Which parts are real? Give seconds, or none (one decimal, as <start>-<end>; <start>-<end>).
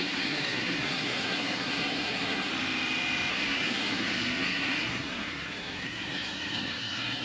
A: 2.5-3.3